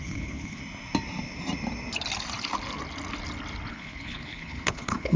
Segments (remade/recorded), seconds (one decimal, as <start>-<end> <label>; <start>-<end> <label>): 0.0-0.6 remade; 0.6-3.7 recorded; 3.7-5.2 remade